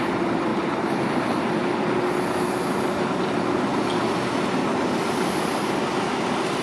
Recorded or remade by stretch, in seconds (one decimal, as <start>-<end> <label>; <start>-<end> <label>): 0.0-0.5 recorded; 0.5-1.0 remade; 1.0-6.6 recorded